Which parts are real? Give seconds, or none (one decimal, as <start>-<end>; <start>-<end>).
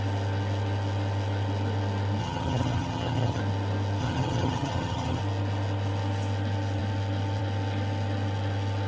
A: 0.0-2.2; 3.4-4.0; 5.2-8.9